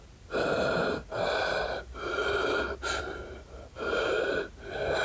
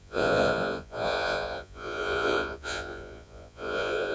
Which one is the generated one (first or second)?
second